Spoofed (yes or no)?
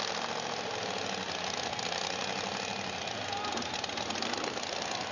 no